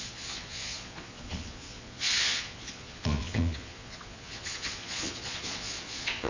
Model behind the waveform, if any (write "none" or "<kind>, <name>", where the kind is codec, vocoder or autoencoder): vocoder, Vocos